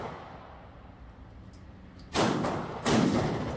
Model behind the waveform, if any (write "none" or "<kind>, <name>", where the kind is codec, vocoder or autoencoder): none